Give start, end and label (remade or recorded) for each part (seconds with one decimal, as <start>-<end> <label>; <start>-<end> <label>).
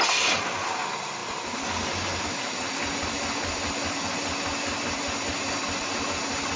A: 0.0-6.6 recorded